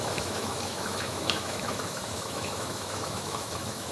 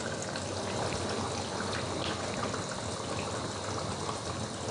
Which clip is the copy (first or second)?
first